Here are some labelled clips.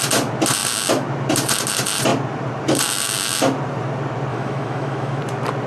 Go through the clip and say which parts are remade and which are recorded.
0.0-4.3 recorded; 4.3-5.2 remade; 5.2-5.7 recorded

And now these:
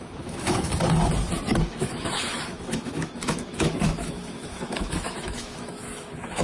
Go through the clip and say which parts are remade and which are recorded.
0.0-0.7 remade; 0.7-1.7 recorded; 1.7-6.4 remade

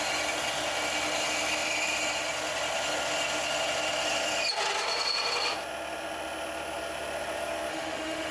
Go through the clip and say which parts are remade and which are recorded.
0.0-7.7 recorded; 7.7-8.3 remade

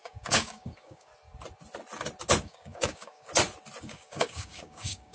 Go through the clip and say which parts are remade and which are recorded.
0.0-1.1 remade; 1.1-2.4 recorded; 2.4-3.3 remade; 3.3-3.8 recorded; 3.8-5.1 remade

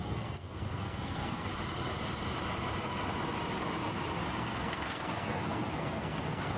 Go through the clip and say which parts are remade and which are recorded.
0.0-1.5 remade; 1.5-4.3 recorded; 4.3-6.6 remade

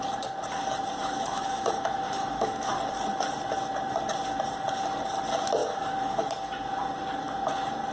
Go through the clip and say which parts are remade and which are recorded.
0.0-1.0 recorded; 1.0-2.7 remade; 2.7-5.6 recorded; 5.6-6.3 remade; 6.3-7.9 recorded